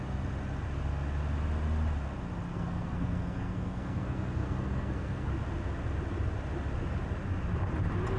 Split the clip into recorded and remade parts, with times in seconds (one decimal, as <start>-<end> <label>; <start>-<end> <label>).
0.0-2.5 recorded; 2.5-5.3 remade; 5.3-8.2 recorded